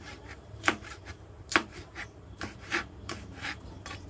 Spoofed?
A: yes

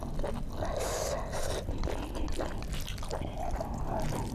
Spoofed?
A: no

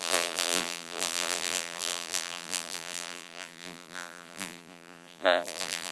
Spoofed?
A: yes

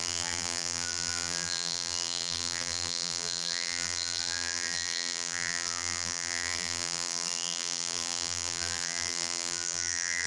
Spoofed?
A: yes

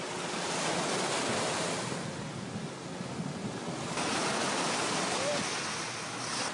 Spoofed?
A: no